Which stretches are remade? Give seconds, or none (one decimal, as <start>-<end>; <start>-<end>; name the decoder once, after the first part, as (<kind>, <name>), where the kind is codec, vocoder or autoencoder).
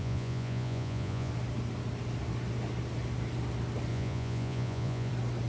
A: 0.0-1.3 (vocoder, Vocos); 3.9-5.1